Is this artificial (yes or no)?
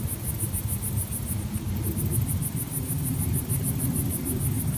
no